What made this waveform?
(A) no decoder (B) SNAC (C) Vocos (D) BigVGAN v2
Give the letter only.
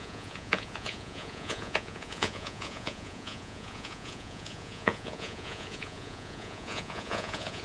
C